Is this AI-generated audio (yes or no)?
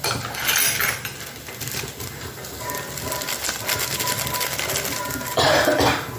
no